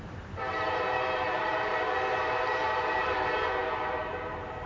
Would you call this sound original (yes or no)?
no